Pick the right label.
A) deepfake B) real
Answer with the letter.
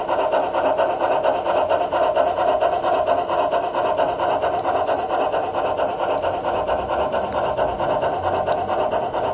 B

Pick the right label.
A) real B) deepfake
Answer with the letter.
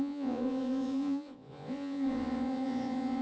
B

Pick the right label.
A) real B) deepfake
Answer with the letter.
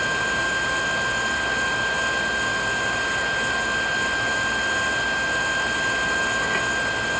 A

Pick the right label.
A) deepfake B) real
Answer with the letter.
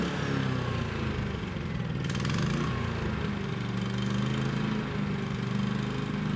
B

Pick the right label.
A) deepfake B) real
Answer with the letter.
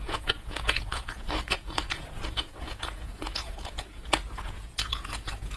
A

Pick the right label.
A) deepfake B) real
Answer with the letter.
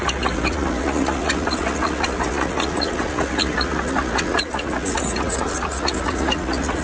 A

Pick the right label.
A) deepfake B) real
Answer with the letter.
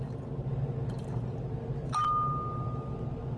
B